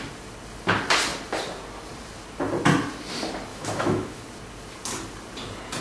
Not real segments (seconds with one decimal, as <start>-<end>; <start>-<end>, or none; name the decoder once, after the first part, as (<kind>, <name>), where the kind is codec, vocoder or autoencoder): 3.5-4.2 (autoencoder, DAC-VAE)